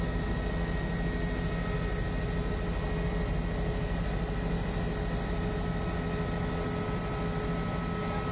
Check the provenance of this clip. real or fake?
real